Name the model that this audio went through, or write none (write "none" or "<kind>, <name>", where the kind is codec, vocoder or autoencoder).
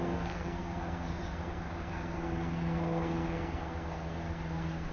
codec, SNAC